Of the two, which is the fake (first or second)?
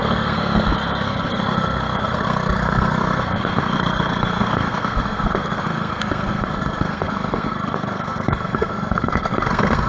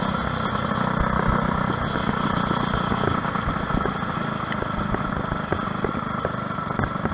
first